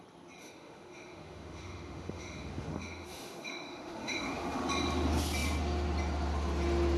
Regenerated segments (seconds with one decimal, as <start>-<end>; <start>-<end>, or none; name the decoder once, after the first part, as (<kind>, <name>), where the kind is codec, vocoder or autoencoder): 0.4-4.6 (autoencoder, DAC-VAE)